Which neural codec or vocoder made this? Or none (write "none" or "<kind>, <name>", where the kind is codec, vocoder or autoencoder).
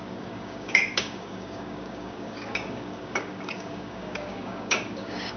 codec, DAC